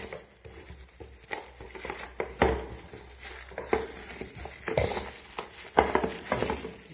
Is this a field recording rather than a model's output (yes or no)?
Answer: yes